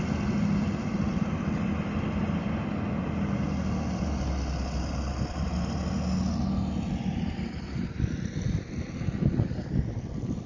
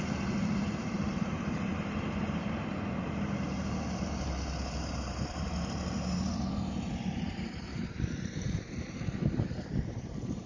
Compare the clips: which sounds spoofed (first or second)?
second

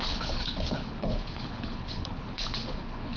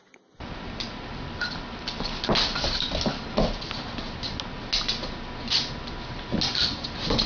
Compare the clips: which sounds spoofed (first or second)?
first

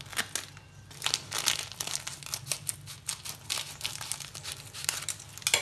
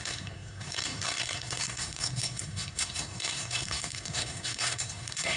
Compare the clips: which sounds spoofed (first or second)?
second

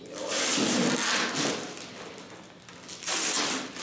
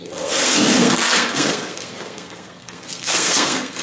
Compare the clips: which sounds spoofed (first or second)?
second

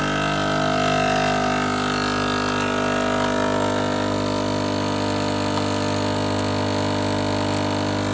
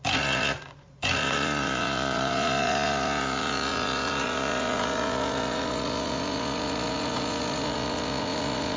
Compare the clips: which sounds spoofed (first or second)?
second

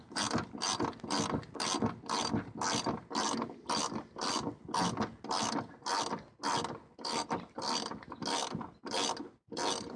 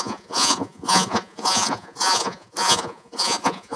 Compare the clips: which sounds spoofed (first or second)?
second